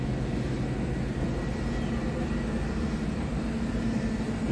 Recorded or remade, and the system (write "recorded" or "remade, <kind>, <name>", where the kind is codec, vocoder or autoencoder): recorded